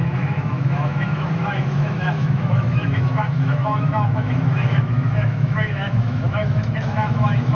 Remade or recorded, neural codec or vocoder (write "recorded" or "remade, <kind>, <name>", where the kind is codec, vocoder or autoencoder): remade, autoencoder, DAC-VAE